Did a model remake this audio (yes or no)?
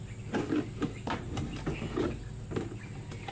no